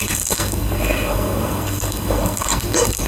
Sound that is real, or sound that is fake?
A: fake